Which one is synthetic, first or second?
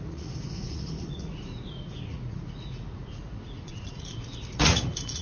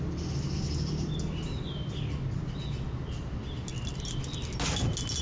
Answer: first